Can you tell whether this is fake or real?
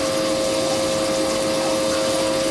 real